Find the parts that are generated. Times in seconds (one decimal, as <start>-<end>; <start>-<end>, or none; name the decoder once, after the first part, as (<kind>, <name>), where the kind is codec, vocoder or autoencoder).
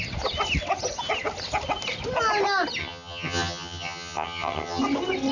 2.8-4.8 (vocoder, HiFi-GAN)